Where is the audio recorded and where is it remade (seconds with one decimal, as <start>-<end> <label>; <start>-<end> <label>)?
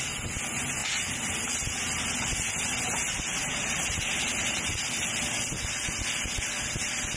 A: 0.0-0.8 recorded; 0.8-1.4 remade; 1.4-3.3 recorded; 3.3-4.8 remade; 4.8-7.2 recorded